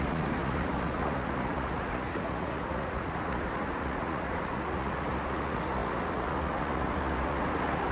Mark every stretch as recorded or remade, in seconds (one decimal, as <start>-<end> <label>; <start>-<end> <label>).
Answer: 0.0-7.9 remade